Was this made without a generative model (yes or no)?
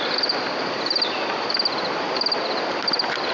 yes